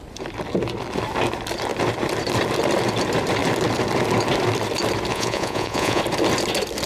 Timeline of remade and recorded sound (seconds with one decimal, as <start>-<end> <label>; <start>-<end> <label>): 0.0-5.1 recorded; 5.1-6.0 remade; 6.0-6.9 recorded